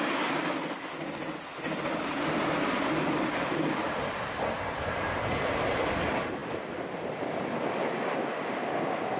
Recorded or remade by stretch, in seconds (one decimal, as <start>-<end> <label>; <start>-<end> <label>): 0.0-9.2 recorded